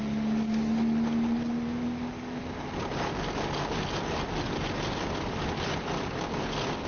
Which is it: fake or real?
real